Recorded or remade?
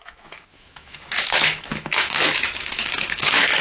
remade